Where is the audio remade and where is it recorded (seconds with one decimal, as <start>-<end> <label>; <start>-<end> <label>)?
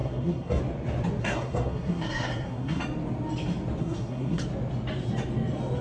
0.0-0.6 remade; 0.6-1.2 recorded; 1.2-2.8 remade; 2.8-3.8 recorded; 3.8-4.4 remade; 4.4-5.8 recorded